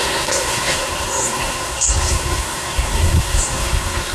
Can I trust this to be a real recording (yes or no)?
no